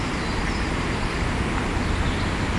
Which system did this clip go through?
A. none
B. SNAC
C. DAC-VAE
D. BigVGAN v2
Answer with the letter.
A